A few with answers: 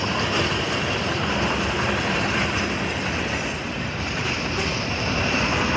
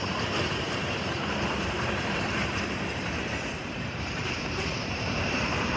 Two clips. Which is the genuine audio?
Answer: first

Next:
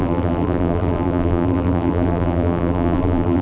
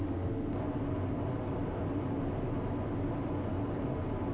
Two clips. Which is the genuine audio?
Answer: second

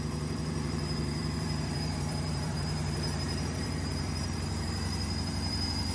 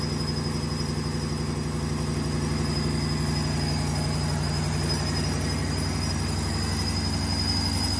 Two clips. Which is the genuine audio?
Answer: second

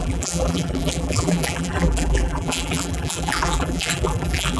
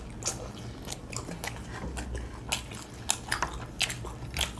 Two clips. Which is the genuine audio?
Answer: second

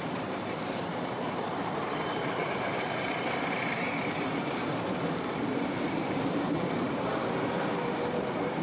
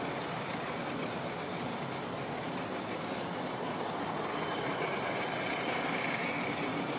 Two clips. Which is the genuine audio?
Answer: second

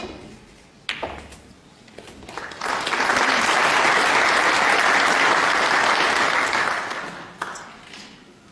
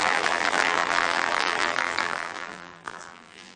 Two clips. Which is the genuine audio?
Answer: first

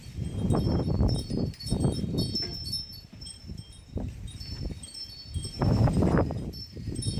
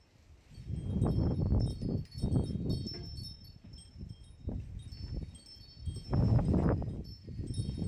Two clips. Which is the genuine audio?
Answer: second